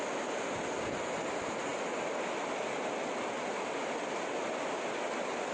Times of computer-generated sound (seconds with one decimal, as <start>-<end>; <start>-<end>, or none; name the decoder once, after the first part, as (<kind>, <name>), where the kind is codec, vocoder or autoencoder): none